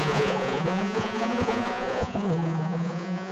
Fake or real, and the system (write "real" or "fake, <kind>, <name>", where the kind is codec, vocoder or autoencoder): fake, vocoder, Vocos